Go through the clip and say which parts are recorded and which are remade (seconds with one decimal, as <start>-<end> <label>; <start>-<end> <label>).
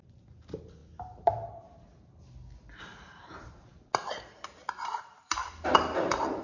0.0-6.4 recorded